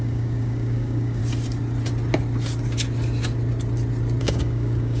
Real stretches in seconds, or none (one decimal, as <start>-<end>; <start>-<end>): 1.2-4.2